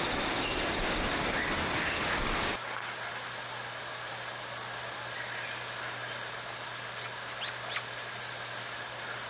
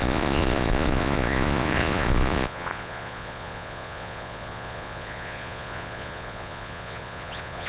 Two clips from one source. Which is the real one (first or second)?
first